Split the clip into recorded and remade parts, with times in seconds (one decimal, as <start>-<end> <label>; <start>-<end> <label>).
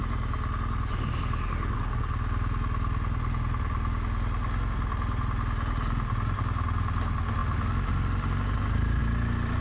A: 0.0-9.6 recorded